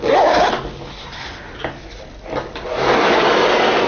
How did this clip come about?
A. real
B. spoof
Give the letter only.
A